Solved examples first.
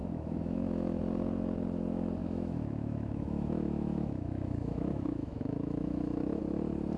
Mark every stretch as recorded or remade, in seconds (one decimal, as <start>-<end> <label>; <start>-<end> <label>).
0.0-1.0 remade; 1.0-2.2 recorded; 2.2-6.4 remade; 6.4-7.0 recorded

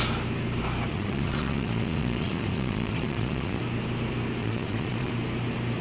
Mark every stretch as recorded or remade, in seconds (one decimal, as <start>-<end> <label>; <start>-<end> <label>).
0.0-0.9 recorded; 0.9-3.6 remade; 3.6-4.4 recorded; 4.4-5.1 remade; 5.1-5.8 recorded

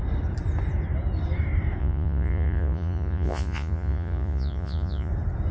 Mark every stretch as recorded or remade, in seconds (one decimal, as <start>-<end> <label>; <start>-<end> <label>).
0.0-1.8 recorded; 1.8-5.1 remade; 5.1-5.5 recorded